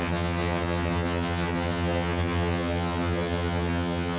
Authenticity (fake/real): fake